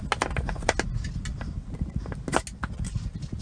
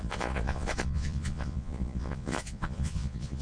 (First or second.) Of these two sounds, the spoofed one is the second